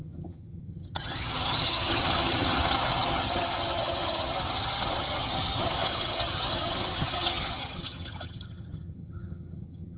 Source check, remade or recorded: remade